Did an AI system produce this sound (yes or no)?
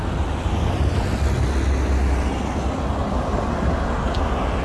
no